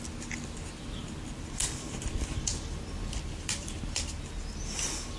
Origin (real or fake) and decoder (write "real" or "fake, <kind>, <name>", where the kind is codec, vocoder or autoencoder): real